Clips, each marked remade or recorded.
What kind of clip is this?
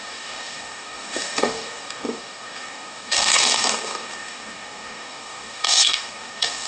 remade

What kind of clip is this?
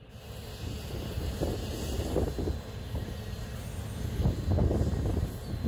recorded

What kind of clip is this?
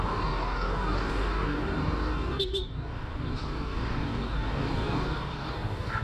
remade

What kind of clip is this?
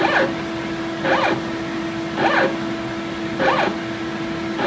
recorded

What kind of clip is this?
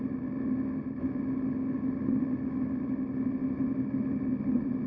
recorded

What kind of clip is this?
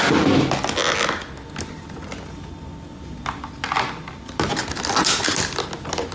recorded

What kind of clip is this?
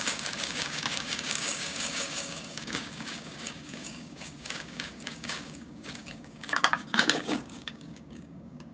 remade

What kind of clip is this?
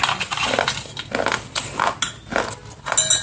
recorded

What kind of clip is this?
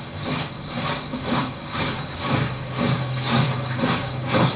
remade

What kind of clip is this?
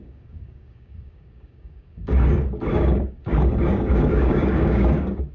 remade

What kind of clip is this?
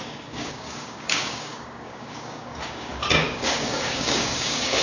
remade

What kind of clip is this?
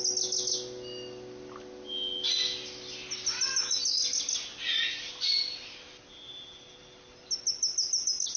recorded